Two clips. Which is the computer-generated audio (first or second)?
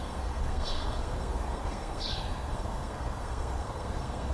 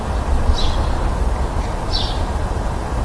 first